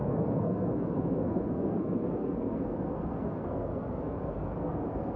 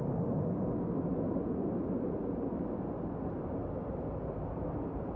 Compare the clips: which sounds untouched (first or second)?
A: second